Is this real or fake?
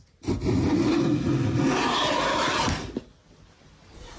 real